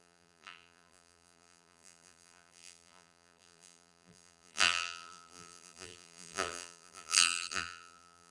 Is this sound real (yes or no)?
no